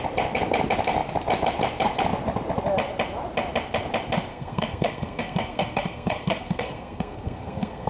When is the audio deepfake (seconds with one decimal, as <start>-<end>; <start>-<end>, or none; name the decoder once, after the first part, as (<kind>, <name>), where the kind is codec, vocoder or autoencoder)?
4.3-7.9 (codec, SNAC)

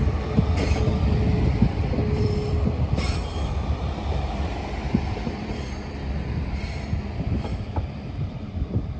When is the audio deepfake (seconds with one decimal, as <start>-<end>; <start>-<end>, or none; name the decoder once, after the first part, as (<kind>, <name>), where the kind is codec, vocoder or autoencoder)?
0.0-9.0 (vocoder, BigVGAN v2)

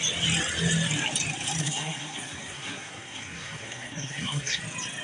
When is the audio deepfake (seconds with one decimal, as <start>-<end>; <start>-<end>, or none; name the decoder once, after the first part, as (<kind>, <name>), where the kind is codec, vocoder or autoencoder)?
1.6-4.6 (codec, SNAC)